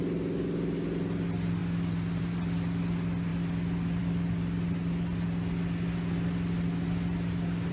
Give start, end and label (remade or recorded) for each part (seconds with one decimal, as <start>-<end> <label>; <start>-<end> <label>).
0.0-7.7 recorded